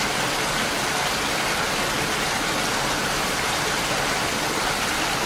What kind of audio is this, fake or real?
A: real